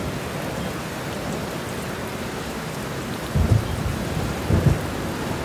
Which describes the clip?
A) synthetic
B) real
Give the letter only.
B